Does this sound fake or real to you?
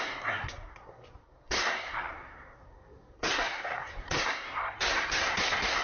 fake